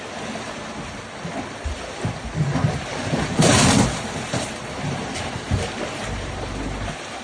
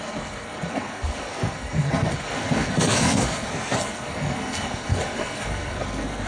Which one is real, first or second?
first